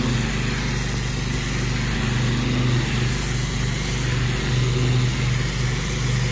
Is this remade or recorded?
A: recorded